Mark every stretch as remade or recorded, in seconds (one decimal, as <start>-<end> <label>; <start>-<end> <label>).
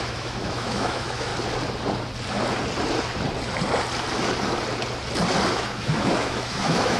0.0-1.3 remade; 1.3-5.5 recorded; 5.5-7.0 remade